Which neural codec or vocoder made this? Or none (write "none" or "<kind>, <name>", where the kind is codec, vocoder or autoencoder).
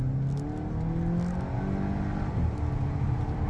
none